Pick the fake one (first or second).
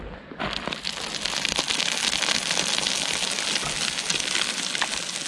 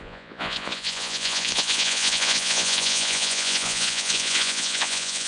second